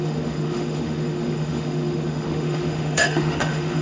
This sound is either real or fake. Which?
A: fake